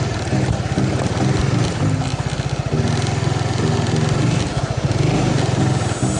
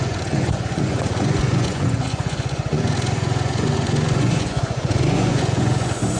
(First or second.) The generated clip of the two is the second